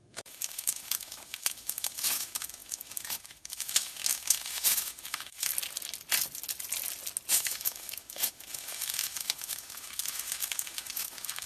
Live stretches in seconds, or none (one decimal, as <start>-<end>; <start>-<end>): 5.5-7.3